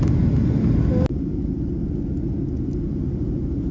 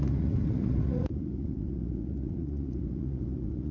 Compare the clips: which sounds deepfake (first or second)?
second